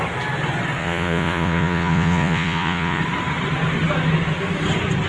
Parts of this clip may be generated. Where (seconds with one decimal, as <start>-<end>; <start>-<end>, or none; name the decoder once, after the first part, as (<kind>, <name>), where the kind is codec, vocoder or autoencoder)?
0.8-3.0 (vocoder, Vocos)

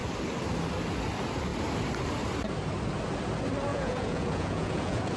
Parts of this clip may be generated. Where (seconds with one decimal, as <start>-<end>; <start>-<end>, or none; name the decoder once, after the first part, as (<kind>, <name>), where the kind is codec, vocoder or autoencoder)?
3.7-5.2 (vocoder, Vocos)

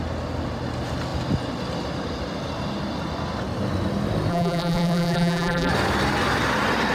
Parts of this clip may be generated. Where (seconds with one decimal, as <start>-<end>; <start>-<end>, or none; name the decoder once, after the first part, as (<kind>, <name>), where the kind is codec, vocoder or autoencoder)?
4.3-5.7 (vocoder, BigVGAN v2)

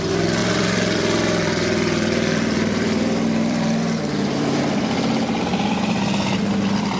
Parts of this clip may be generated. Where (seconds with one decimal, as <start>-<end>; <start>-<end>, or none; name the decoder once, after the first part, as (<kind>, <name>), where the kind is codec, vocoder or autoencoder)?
0.4-4.6 (vocoder, BigVGAN v2); 5.5-6.5

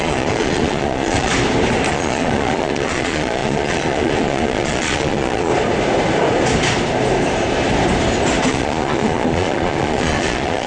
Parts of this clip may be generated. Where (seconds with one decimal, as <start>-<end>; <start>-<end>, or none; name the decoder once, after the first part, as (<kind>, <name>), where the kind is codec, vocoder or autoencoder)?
0.0-1.3 (vocoder, Vocos); 1.9-5.5; 8.5-10.7